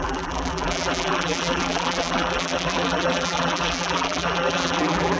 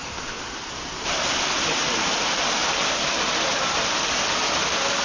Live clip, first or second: second